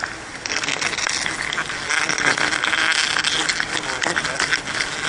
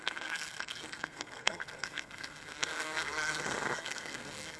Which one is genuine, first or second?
first